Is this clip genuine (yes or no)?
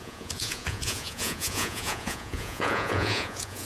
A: no